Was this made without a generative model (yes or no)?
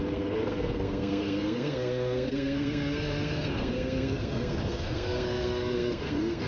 no